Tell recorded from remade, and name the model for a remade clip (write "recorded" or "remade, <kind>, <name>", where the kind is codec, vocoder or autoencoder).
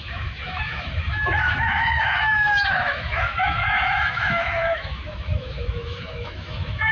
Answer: remade, autoencoder, DAC-VAE